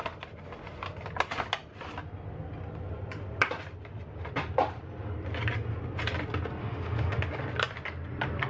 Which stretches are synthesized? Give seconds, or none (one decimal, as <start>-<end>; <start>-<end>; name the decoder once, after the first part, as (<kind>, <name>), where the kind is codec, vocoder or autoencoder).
6.6-7.2 (autoencoder, DAC-VAE)